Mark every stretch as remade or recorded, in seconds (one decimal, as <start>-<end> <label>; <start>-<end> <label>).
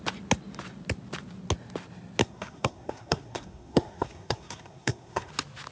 0.0-2.2 recorded; 2.2-5.3 remade; 5.3-5.7 recorded